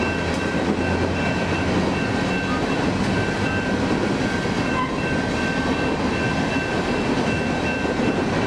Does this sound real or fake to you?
real